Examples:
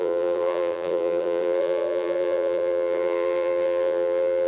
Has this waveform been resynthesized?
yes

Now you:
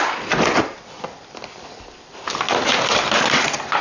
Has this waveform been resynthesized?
yes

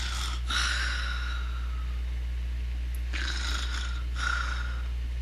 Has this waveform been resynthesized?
no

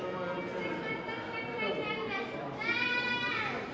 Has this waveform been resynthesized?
no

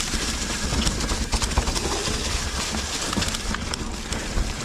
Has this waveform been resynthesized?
no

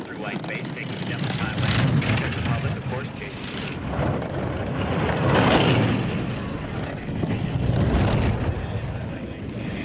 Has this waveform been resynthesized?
no